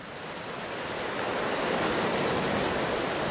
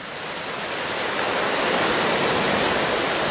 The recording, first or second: first